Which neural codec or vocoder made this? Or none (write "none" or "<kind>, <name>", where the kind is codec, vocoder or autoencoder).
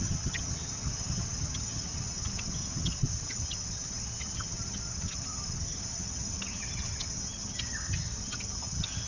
vocoder, HiFi-GAN